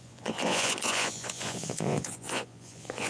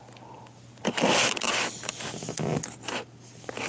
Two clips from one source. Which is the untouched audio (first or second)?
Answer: second